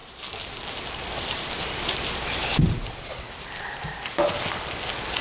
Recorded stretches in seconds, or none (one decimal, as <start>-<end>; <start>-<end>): 3.1-5.2